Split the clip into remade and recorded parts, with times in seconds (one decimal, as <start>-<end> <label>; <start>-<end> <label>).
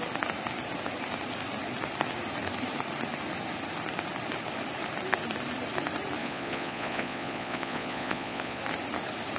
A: 0.0-6.2 recorded; 6.2-8.6 remade; 8.6-9.4 recorded